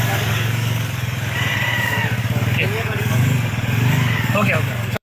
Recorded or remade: remade